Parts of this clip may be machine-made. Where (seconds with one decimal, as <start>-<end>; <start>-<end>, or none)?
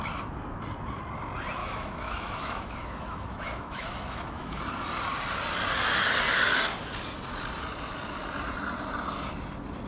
1.6-4.6